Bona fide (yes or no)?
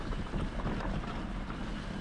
yes